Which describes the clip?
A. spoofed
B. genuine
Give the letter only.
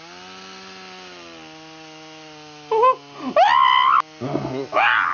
B